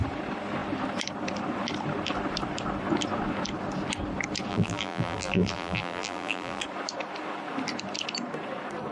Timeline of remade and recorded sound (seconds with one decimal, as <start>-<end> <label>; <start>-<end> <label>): 0.0-4.5 recorded; 4.5-6.6 remade; 6.6-8.9 recorded